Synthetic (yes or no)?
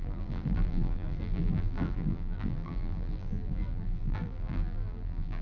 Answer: yes